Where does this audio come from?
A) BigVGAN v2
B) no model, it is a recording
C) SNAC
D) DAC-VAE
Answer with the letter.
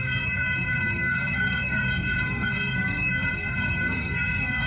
C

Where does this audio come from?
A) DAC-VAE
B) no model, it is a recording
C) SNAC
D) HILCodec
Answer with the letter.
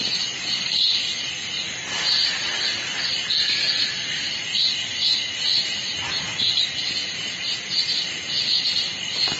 B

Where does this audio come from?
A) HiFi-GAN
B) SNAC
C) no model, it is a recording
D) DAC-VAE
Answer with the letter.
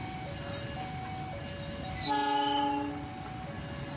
C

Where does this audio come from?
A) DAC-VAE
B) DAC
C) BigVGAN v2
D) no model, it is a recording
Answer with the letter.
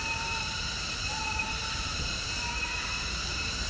C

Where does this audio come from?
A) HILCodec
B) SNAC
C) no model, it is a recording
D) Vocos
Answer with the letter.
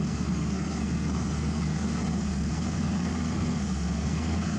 B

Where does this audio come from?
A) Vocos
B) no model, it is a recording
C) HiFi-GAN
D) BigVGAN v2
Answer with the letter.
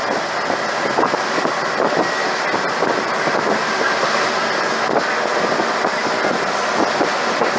B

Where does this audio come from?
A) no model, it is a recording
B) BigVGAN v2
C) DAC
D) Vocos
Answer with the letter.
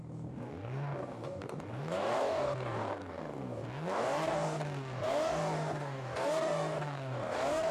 C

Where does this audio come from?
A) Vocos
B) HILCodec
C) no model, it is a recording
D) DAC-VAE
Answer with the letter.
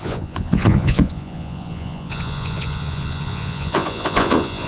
A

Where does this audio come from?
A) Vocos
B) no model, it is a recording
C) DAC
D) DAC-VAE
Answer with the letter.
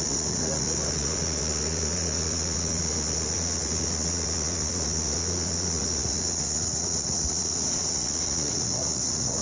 A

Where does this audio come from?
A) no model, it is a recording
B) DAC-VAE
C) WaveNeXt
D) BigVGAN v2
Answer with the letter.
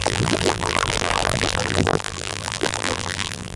D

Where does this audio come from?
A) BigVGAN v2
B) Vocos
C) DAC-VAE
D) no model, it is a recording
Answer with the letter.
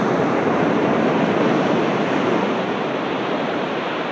A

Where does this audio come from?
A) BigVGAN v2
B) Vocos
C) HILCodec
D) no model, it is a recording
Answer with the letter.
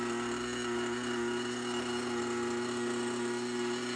D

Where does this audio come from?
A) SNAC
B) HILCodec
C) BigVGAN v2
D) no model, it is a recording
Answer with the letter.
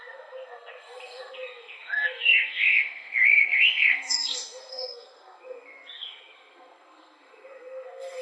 A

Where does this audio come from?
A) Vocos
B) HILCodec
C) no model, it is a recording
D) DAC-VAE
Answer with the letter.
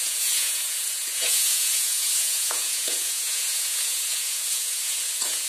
A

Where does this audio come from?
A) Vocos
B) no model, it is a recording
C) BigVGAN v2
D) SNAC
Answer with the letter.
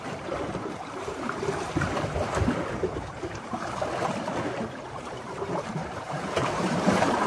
C